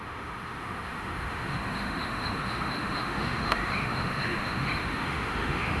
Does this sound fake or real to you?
fake